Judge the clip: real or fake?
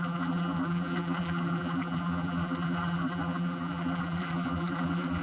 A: fake